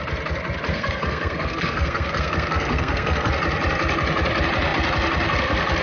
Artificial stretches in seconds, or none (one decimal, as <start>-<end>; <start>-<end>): 0.7-3.3